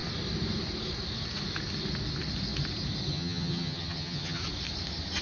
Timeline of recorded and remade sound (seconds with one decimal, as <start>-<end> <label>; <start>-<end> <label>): 0.0-3.1 recorded; 3.1-4.4 remade; 4.4-5.2 recorded